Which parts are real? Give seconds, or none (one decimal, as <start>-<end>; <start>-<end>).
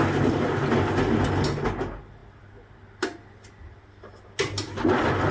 0.0-5.3